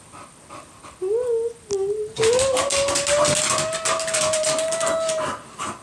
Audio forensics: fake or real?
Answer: real